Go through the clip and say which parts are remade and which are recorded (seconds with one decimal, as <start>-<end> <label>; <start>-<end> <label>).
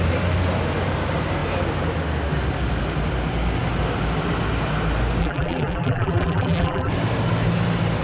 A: 0.0-5.2 recorded; 5.2-6.9 remade; 6.9-8.0 recorded